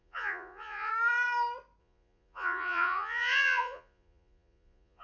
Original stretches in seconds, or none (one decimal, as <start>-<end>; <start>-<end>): 0.9-1.8